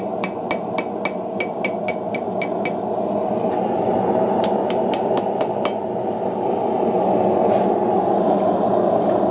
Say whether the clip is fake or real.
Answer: real